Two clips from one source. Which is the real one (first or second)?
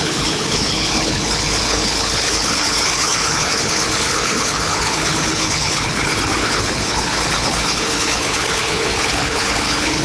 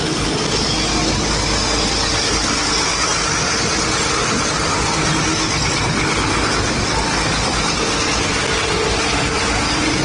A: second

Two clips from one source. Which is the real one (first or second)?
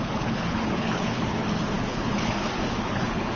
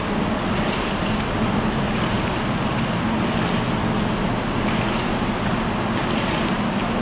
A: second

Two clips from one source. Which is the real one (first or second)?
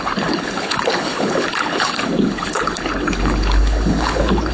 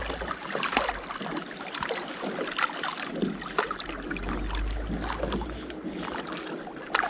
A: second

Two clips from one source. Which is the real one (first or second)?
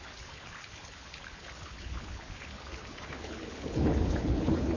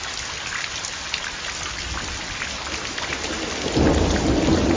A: second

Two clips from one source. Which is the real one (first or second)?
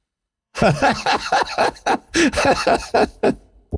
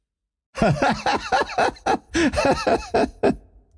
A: second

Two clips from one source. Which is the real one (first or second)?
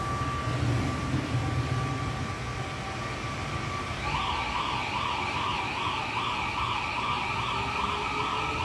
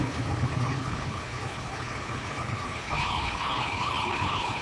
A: first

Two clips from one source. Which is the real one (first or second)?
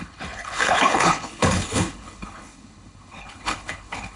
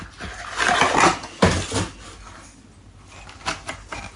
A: second